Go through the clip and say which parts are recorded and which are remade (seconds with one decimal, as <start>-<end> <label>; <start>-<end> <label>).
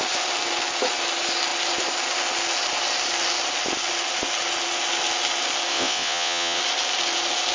0.0-5.7 recorded; 5.7-6.6 remade; 6.6-7.5 recorded